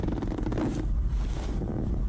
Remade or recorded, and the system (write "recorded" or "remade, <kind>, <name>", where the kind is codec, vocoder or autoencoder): recorded